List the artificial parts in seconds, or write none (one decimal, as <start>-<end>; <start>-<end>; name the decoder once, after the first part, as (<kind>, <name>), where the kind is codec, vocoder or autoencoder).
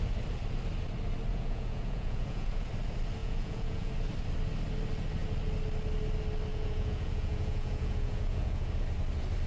1.3-2.7 (vocoder, Vocos); 3.2-3.9; 6.5-8.7